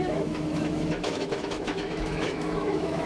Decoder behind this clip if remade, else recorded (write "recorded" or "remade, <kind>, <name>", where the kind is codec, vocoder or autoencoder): remade, autoencoder, DAC-VAE